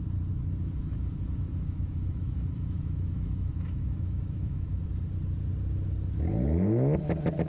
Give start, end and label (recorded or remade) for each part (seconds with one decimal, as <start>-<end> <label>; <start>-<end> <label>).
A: 0.0-0.9 recorded; 0.9-4.9 remade; 4.9-7.5 recorded